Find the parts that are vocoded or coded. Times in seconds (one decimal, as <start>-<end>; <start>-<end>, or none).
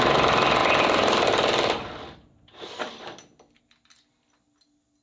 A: none